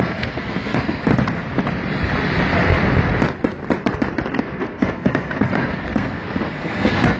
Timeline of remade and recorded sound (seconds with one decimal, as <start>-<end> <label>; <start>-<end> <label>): 0.0-1.1 remade; 1.1-4.4 recorded; 4.4-7.2 remade